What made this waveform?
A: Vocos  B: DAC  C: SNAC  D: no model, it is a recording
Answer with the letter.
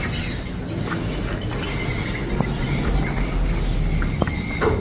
D